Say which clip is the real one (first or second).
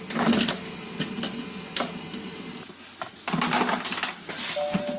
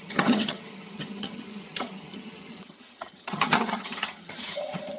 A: first